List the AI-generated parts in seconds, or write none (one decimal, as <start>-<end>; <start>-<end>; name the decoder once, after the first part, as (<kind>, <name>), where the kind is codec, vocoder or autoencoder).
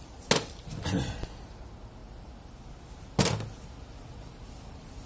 none